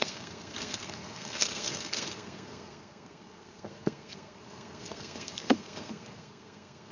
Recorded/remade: remade